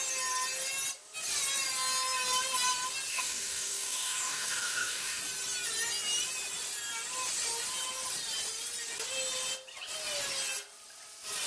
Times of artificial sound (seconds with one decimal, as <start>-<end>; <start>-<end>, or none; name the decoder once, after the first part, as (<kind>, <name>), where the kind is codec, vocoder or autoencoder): 3.1-5.2 (codec, DAC)